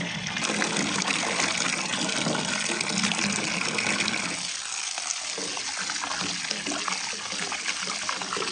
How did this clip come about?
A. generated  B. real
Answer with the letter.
B